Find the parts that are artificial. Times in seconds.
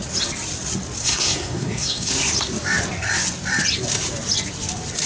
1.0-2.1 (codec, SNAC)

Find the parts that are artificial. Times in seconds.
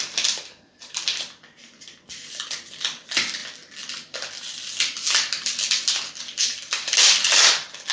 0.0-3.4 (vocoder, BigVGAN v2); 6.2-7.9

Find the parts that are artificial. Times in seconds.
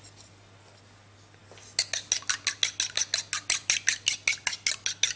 none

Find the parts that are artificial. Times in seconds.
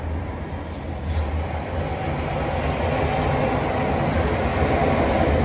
none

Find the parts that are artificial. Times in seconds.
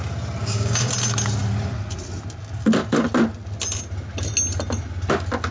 0.4-0.9 (codec, DAC)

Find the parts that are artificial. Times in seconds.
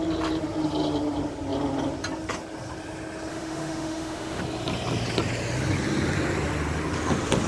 3.3-4.4 (autoencoder, DAC-VAE)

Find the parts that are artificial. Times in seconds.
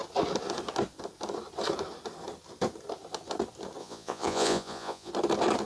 3.8-5.1 (vocoder, Vocos)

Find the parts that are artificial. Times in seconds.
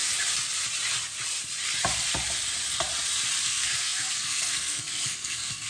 3.4-5.7 (codec, SNAC)